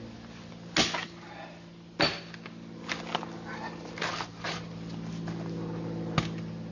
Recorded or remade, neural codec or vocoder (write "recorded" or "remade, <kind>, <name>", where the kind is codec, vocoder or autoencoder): recorded